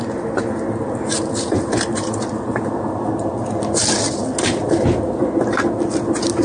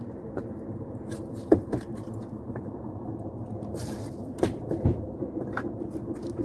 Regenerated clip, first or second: second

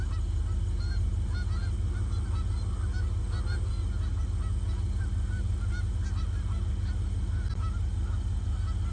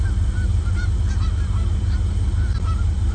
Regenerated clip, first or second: second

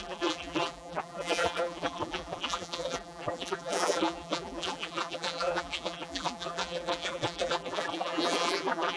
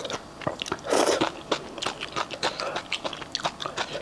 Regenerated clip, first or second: first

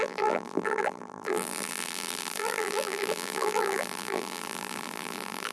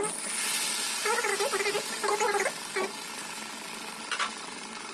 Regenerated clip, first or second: first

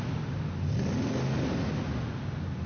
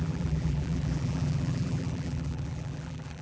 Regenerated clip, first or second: second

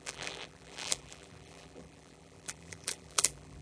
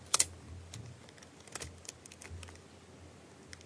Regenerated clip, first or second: first